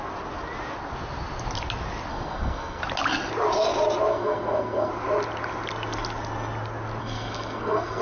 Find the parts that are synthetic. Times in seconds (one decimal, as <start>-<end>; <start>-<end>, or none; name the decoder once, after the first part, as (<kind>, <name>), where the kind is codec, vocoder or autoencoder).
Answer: 2.1-2.8 (codec, SNAC); 4.1-4.9; 7.0-8.0